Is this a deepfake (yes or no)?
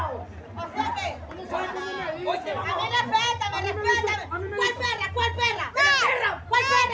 no